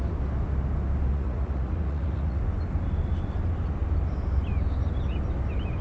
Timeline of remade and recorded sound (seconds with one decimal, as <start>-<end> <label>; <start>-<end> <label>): 0.0-1.1 recorded; 1.1-2.4 remade; 2.4-5.8 recorded